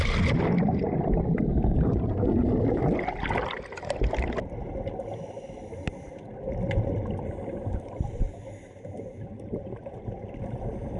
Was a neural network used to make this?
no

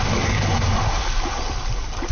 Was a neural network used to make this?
no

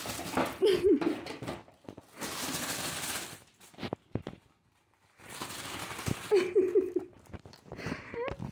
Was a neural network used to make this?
no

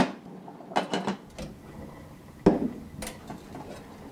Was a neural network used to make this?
no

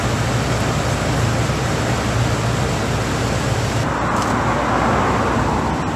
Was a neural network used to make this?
no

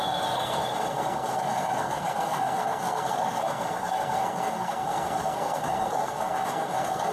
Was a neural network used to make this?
yes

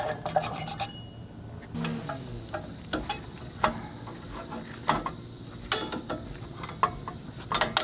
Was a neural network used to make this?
no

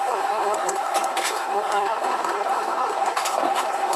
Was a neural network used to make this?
yes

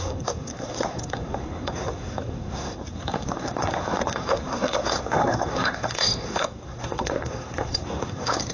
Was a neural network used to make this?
yes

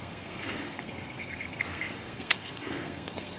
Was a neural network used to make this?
yes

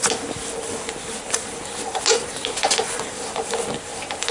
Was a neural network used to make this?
no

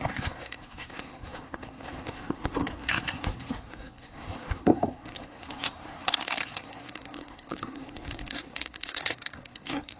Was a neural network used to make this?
yes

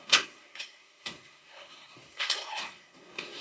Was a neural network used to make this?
yes